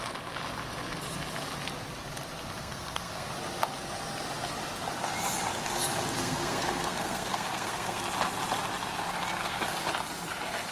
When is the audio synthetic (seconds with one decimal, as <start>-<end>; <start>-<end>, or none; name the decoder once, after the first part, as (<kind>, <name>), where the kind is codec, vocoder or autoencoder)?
2.6-3.3 (codec, SNAC); 6.2-8.0; 9.4-9.9

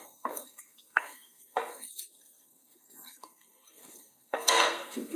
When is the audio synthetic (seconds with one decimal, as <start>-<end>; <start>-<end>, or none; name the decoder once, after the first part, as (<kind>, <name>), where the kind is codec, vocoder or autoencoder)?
0.0-5.2 (codec, SNAC)